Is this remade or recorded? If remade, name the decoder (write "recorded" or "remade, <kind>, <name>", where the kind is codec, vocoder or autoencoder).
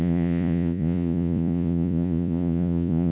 remade, vocoder, Vocos